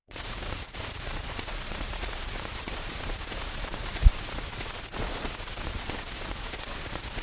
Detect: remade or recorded remade